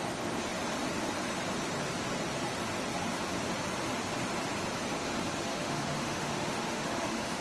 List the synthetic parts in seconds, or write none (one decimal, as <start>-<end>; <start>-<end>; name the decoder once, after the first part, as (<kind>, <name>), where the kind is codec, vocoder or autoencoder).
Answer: 5.5-7.4 (autoencoder, DAC-VAE)